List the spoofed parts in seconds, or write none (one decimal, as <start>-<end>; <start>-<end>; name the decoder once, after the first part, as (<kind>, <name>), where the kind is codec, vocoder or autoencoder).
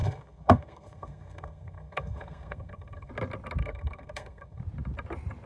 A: 0.0-3.1 (codec, SNAC); 3.6-4.6